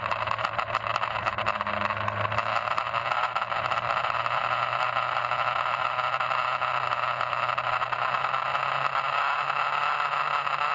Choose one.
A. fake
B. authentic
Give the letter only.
B